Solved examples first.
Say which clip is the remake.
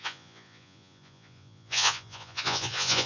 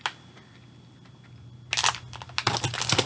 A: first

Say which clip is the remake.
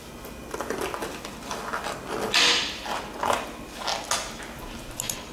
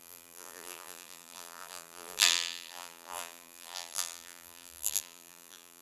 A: second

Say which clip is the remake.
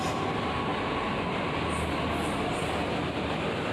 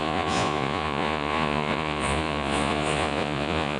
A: second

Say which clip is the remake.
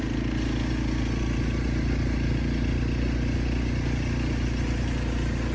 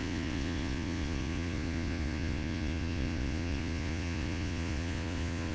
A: second